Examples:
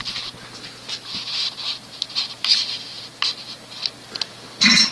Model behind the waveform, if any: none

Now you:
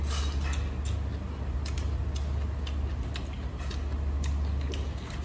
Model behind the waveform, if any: none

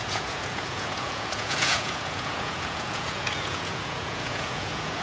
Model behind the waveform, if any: vocoder, Vocos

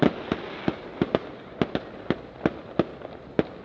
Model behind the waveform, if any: none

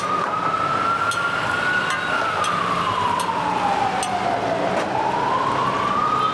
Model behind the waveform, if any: none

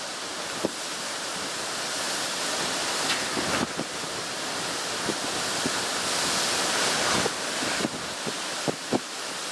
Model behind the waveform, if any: none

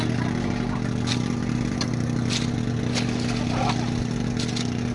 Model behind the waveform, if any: none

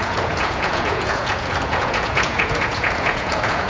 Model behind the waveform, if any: vocoder, Vocos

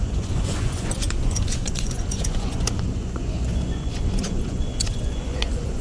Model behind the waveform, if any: vocoder, Vocos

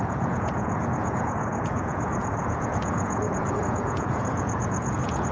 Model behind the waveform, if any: vocoder, Vocos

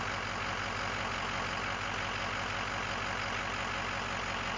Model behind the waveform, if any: none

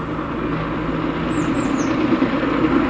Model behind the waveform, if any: none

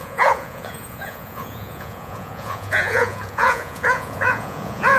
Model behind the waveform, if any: vocoder, Vocos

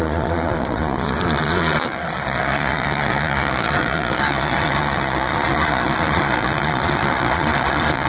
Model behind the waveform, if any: vocoder, Vocos